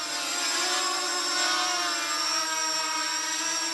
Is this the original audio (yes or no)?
yes